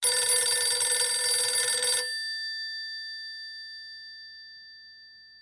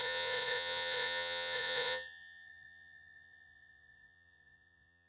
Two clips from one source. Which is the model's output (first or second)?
second